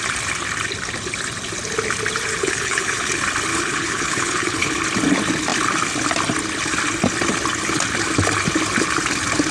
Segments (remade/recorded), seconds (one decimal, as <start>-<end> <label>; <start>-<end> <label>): 0.0-2.4 recorded; 2.4-3.1 remade; 3.1-3.5 recorded; 3.5-4.7 remade; 4.7-9.5 recorded